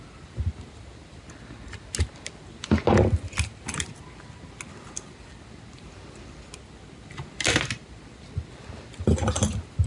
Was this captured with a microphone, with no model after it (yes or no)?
yes